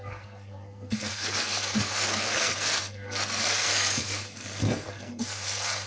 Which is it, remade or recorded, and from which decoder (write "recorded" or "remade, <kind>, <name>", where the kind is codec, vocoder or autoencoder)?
remade, codec, SNAC